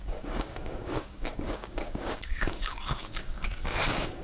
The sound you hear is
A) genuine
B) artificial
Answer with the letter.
B